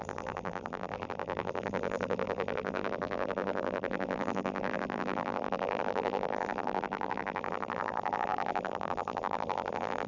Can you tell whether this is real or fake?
fake